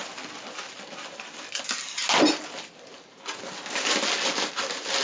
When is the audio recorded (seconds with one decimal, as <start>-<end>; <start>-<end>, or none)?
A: 0.0-5.0